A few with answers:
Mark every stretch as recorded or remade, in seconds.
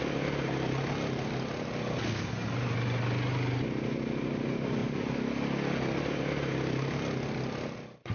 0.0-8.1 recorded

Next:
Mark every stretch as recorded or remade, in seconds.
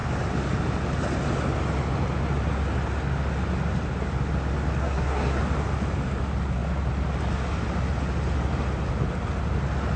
0.0-4.8 recorded; 4.8-5.4 remade; 5.4-10.0 recorded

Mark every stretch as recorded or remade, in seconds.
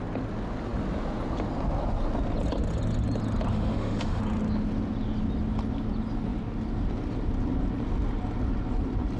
0.0-3.5 recorded; 3.5-4.2 remade; 4.2-9.2 recorded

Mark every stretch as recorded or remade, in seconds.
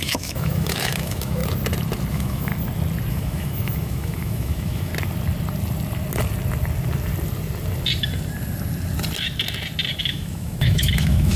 0.0-1.4 remade; 1.4-2.1 recorded; 2.1-2.5 remade; 2.5-3.1 recorded; 3.1-4.9 remade; 4.9-10.0 recorded; 10.0-11.4 remade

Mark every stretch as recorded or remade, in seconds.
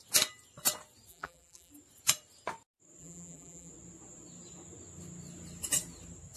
0.0-1.1 recorded; 1.1-1.7 remade; 1.7-3.0 recorded; 3.0-3.7 remade; 3.7-6.4 recorded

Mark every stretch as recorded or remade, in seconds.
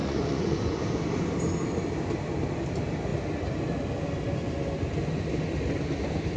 0.0-0.8 remade; 0.8-6.4 recorded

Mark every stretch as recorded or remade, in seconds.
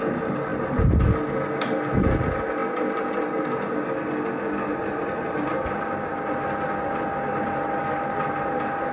0.0-8.9 recorded